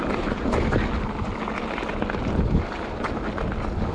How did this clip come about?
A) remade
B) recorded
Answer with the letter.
B